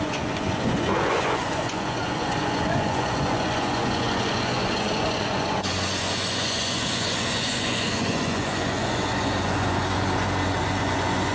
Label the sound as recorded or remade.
remade